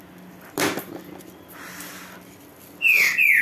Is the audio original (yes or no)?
yes